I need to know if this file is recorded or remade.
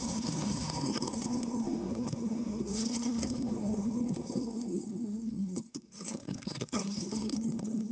remade